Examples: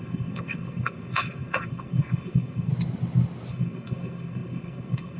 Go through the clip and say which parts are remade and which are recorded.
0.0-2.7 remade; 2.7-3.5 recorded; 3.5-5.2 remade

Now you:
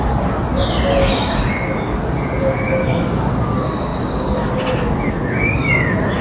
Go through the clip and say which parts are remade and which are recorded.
0.0-1.0 recorded; 1.0-1.6 remade; 1.6-6.2 recorded

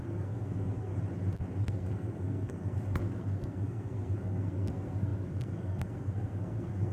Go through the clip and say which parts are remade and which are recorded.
0.0-0.9 remade; 0.9-1.6 recorded; 1.6-6.9 remade

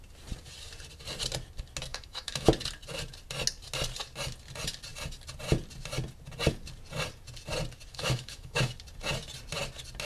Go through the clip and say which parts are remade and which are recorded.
0.0-1.9 recorded; 1.9-2.5 remade; 2.5-7.9 recorded; 7.9-8.7 remade; 8.7-10.0 recorded

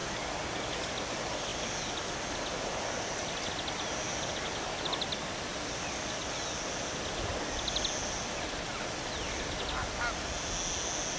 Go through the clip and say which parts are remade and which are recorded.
0.0-11.2 recorded

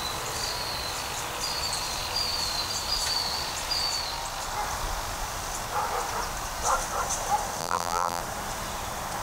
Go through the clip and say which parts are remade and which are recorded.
0.0-7.6 recorded; 7.6-8.2 remade; 8.2-9.2 recorded